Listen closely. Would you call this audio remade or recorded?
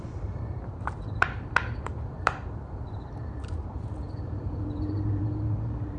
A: remade